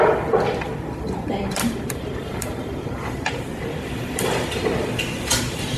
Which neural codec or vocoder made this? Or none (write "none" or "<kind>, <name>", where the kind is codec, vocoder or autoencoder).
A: vocoder, BigVGAN v2